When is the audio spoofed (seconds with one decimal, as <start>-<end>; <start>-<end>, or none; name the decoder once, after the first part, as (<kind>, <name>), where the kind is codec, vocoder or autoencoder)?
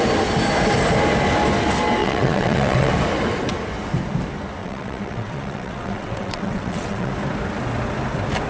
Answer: 2.0-2.9 (vocoder, WaveNeXt); 4.6-7.1